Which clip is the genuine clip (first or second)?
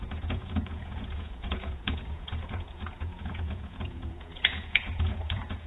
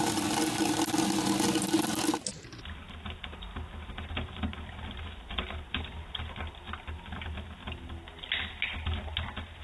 second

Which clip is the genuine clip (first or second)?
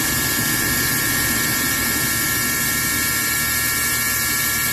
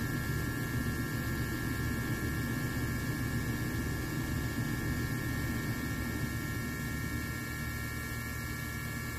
second